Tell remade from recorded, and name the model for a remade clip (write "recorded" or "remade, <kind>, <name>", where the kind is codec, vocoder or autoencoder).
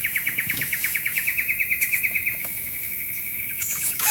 remade, autoencoder, DAC-VAE